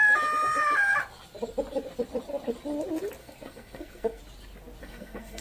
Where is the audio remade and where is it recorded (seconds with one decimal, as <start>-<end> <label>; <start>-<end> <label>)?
0.0-3.2 recorded; 3.2-4.2 remade; 4.2-4.8 recorded; 4.8-5.4 remade